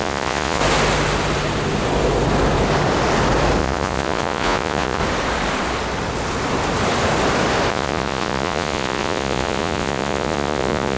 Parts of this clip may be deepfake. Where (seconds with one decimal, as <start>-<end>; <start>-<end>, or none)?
0.0-0.6; 3.6-5.0; 7.7-11.0